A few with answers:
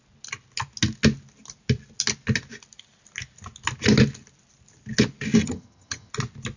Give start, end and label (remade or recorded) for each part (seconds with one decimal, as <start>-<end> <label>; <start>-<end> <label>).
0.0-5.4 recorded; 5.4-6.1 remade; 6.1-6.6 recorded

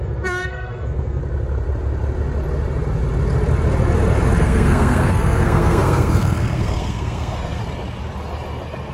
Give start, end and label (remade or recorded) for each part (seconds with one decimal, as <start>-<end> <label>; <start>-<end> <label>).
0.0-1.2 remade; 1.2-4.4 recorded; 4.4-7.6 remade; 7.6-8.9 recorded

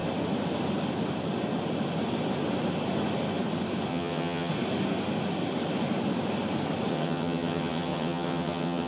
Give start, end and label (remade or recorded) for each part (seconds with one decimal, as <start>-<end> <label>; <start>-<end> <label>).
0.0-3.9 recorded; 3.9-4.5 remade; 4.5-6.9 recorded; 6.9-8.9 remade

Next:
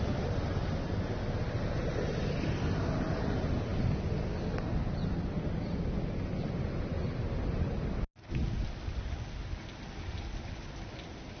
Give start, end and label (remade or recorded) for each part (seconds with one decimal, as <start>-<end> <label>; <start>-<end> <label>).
0.0-11.4 recorded

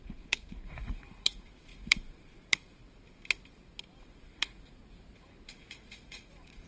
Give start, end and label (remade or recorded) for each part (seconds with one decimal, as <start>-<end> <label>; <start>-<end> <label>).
0.0-2.8 remade; 2.8-4.0 recorded; 4.0-4.8 remade; 4.8-5.5 recorded; 5.5-6.7 remade

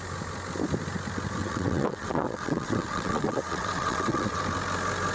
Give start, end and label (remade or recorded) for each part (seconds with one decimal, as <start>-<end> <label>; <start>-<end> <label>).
0.0-1.4 recorded; 1.4-4.4 remade; 4.4-5.1 recorded

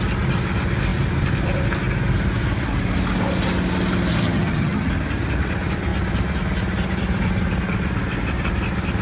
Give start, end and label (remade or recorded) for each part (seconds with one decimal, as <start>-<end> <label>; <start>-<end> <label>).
0.0-4.1 recorded; 4.1-4.9 remade; 4.9-9.0 recorded

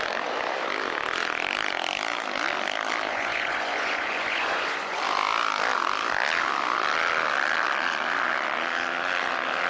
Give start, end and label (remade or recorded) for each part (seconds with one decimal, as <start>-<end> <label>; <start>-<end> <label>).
0.0-3.1 recorded; 3.1-5.0 remade; 5.0-9.7 recorded